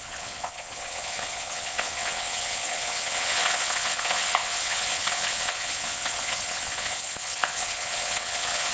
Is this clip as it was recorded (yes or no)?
no